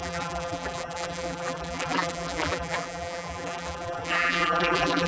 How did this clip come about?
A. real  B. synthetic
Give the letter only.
B